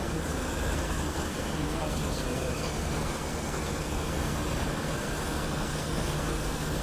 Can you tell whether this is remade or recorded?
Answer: remade